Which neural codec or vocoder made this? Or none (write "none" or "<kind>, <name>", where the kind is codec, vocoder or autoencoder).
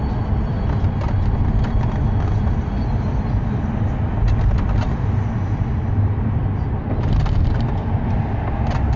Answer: none